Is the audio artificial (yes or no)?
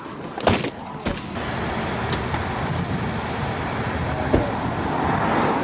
no